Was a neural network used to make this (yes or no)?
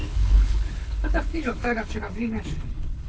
yes